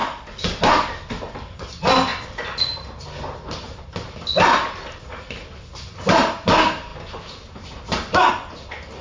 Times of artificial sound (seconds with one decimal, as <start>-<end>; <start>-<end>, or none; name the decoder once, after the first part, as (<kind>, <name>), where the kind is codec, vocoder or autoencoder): none